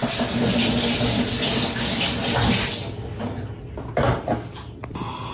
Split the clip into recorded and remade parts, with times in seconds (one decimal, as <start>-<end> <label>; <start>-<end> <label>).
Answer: 0.0-5.3 recorded